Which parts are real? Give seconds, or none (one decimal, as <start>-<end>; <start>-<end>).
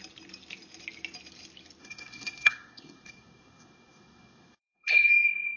0.0-1.8